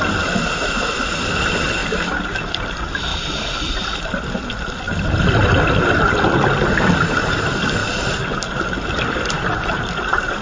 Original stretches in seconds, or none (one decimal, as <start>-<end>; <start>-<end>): 1.8-2.6; 7.8-8.5